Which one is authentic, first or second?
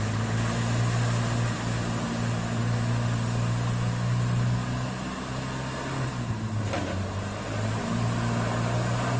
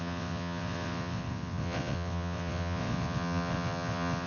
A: first